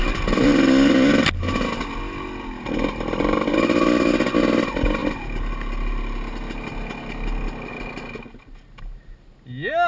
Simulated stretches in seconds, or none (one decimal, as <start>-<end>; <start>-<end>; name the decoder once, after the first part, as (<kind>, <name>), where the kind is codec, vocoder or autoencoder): none